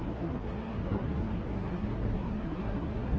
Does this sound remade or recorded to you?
remade